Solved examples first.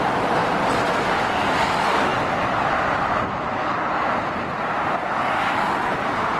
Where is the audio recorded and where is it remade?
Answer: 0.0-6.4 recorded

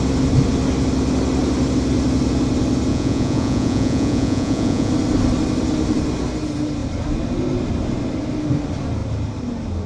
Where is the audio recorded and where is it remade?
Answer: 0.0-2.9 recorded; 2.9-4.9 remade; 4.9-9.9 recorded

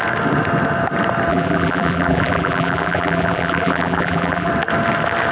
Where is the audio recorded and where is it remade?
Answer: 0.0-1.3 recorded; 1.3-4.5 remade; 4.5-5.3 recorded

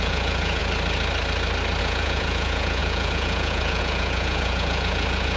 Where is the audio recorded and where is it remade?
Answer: 0.0-0.6 remade; 0.6-1.8 recorded; 1.8-5.4 remade

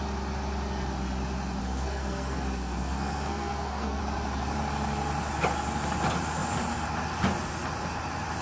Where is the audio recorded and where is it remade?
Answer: 0.0-1.6 recorded; 1.6-4.0 remade; 4.0-8.4 recorded